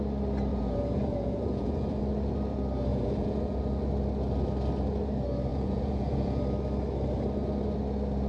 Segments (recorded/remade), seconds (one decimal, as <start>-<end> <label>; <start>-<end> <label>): 0.0-0.5 recorded; 0.5-2.0 remade; 2.0-2.9 recorded; 2.9-3.6 remade; 3.6-5.5 recorded; 5.5-6.4 remade; 6.4-8.3 recorded